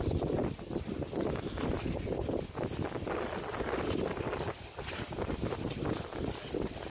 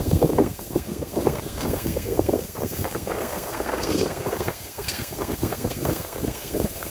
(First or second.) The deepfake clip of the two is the second